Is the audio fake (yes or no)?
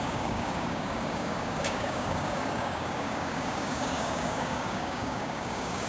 yes